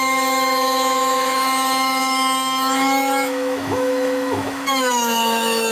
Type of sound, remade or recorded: remade